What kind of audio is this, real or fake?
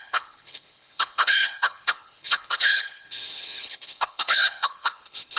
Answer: fake